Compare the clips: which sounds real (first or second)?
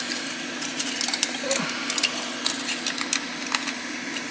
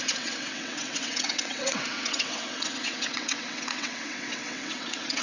first